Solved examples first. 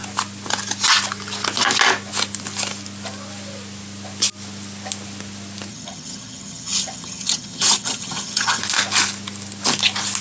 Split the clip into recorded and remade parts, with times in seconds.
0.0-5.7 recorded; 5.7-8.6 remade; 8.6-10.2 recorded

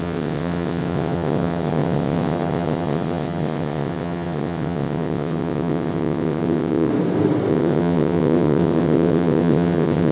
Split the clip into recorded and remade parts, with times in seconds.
0.0-6.9 remade; 6.9-7.5 recorded; 7.5-10.1 remade

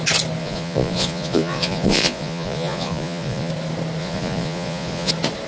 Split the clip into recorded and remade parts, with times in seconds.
0.0-0.4 recorded; 0.4-3.5 remade; 3.5-4.0 recorded; 4.0-5.1 remade; 5.1-5.5 recorded

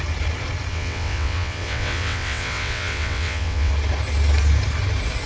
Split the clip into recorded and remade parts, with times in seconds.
0.0-0.7 recorded; 0.7-3.7 remade; 3.7-5.3 recorded